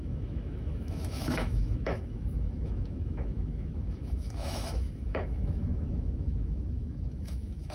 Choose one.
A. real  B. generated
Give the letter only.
B